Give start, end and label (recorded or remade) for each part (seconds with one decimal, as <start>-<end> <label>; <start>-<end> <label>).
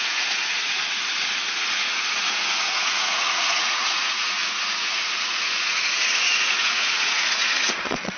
0.0-0.8 remade; 0.8-1.5 recorded; 1.5-8.2 remade